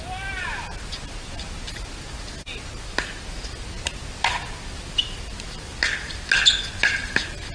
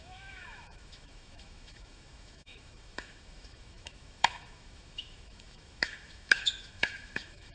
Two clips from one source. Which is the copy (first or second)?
second